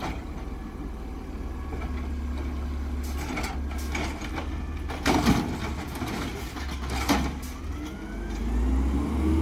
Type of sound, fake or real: real